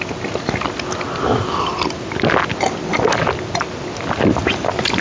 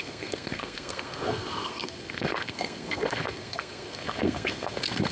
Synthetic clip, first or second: second